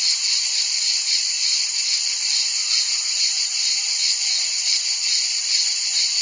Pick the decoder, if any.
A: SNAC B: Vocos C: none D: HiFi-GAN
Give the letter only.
C